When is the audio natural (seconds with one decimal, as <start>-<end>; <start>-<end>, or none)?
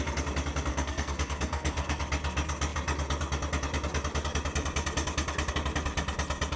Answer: 0.0-0.7; 2.0-6.6